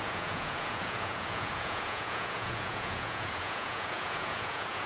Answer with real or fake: fake